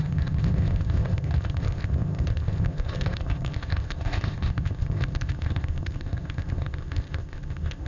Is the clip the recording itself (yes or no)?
no